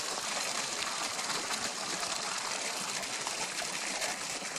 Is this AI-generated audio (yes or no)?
yes